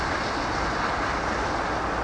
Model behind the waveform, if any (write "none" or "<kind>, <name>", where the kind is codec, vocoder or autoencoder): none